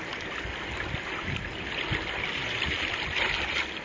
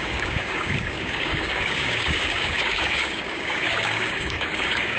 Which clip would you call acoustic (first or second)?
first